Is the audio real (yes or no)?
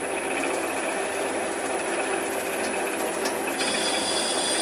yes